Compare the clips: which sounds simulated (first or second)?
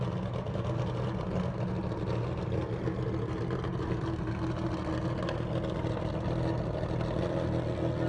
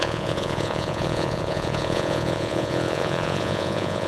second